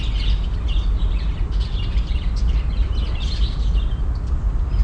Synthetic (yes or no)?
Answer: no